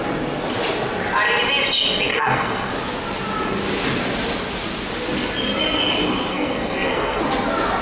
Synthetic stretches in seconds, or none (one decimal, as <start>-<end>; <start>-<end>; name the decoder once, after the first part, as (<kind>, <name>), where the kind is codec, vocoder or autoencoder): 2.1-2.7 (codec, SNAC); 6.3-7.2